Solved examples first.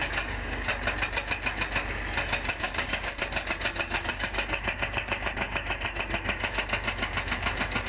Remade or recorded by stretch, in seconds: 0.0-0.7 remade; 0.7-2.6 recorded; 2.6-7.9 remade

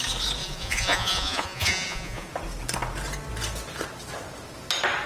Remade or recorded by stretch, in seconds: 0.0-0.4 recorded; 0.4-2.3 remade; 2.3-5.1 recorded

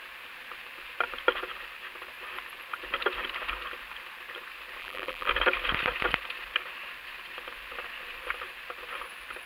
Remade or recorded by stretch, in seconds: 0.0-4.8 recorded; 4.8-5.3 remade; 5.3-9.5 recorded

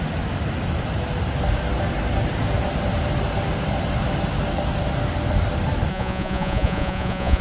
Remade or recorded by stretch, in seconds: 0.0-5.9 recorded; 5.9-7.4 remade

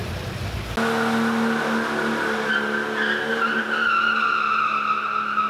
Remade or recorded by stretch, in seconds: 0.0-5.5 recorded